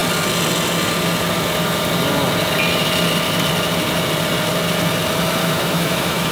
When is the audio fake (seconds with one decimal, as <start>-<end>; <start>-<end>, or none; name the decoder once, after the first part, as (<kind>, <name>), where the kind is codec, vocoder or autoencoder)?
5.4-6.3 (autoencoder, DAC-VAE)